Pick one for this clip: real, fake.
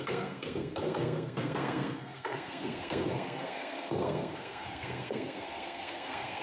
fake